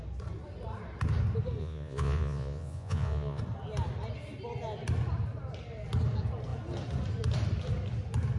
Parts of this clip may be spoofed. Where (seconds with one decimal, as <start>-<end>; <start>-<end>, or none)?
1.6-3.4